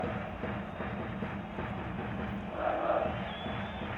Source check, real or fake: real